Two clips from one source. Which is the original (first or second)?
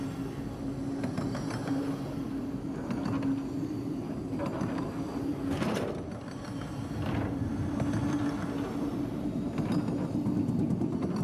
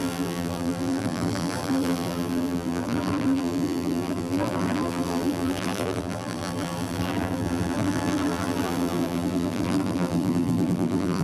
first